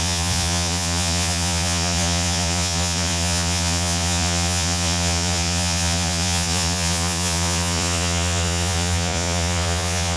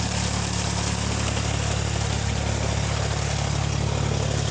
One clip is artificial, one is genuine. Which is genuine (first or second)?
second